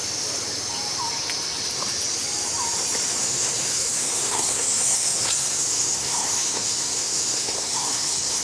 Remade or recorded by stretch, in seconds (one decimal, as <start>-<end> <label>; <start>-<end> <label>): 0.0-3.2 recorded; 3.2-8.4 remade